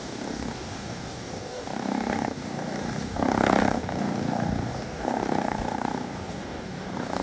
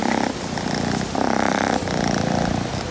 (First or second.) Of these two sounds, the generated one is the first